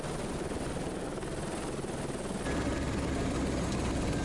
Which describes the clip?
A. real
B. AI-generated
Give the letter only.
A